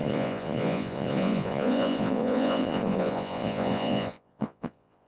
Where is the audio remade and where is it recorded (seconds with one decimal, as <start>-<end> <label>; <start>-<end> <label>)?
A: 0.0-5.1 remade